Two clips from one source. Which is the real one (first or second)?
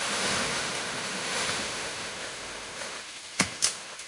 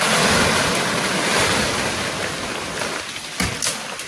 second